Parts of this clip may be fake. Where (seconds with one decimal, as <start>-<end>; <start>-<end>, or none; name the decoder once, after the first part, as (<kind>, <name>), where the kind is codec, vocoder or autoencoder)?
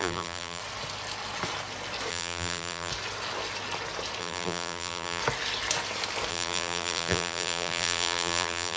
0.0-0.6 (vocoder, BigVGAN v2); 2.1-2.9; 4.2-5.2; 6.3-8.8